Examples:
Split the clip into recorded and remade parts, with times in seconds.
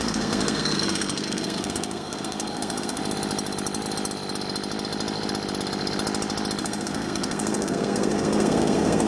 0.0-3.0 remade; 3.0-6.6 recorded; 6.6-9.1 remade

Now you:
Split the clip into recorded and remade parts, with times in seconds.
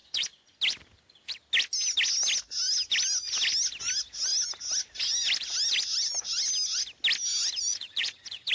0.0-0.6 remade; 0.6-7.7 recorded; 7.7-8.5 remade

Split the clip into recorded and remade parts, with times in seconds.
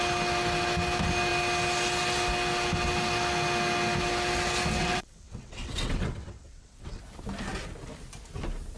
0.0-4.8 recorded; 4.8-7.0 remade; 7.0-8.8 recorded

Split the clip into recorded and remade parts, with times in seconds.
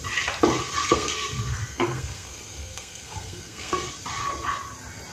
0.0-0.8 recorded; 0.8-3.9 remade; 3.9-5.1 recorded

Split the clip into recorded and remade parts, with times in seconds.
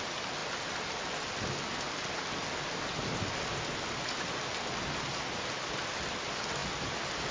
0.0-7.3 recorded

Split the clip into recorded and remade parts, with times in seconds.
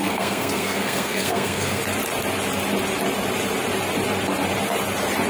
0.0-1.8 remade; 1.8-5.3 recorded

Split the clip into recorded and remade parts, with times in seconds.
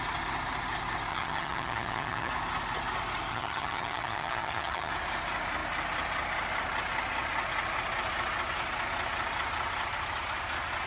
0.0-1.1 recorded; 1.1-2.3 remade; 2.3-3.3 recorded; 3.3-4.9 remade; 4.9-10.9 recorded